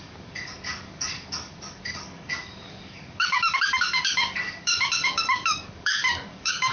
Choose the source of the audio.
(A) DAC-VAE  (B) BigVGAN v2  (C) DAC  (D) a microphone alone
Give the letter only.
C